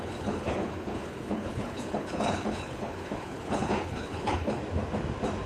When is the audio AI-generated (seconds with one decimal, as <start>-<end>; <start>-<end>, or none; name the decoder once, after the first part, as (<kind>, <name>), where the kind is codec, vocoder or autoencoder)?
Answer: 0.0-4.6 (codec, HILCodec)